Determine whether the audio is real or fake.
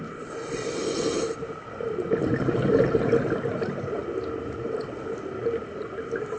real